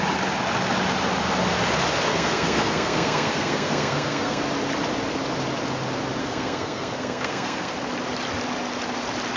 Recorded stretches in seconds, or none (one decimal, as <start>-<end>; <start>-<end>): 0.0-2.1; 4.4-6.2; 7.7-9.4